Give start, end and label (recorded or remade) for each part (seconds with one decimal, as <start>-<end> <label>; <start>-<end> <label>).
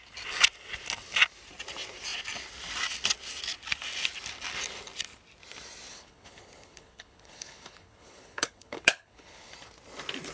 0.0-5.9 recorded; 5.9-9.5 remade; 9.5-10.3 recorded